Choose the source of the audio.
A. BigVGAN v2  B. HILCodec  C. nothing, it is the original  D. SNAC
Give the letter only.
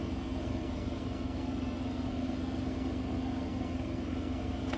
D